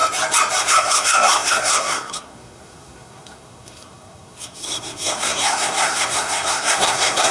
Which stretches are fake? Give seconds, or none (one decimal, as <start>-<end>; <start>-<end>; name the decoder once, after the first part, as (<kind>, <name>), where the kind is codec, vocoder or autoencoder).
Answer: 0.6-7.3 (codec, SNAC)